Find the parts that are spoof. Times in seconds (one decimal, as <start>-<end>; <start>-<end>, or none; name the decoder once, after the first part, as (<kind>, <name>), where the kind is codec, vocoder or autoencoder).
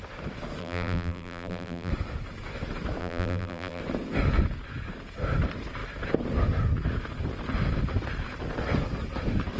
0.6-1.9 (vocoder, BigVGAN v2); 3.0-3.8